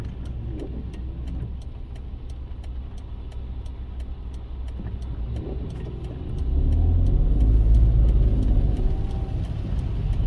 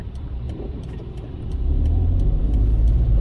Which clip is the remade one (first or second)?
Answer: second